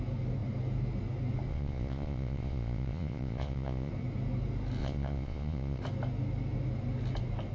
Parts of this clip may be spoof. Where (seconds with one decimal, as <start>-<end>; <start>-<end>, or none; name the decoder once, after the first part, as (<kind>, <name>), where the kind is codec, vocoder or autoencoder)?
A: 1.5-3.9 (vocoder, Vocos); 4.8-5.8

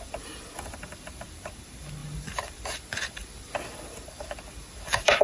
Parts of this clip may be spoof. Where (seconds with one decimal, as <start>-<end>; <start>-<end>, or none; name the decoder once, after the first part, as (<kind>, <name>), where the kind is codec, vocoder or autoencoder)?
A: 0.0-5.2 (vocoder, BigVGAN v2)

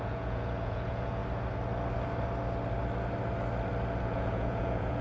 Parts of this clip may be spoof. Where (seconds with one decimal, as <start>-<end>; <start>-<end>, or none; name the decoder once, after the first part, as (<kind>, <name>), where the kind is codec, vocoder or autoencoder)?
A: 0.0-1.2 (vocoder, Vocos); 4.0-5.0